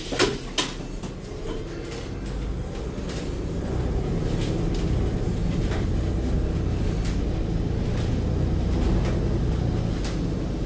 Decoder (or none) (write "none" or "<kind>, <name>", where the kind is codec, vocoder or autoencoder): none